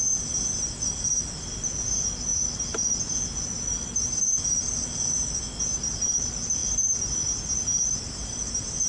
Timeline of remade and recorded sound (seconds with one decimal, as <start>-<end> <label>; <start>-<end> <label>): 0.0-8.9 recorded